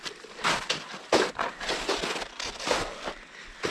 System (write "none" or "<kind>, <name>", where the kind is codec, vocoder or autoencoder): none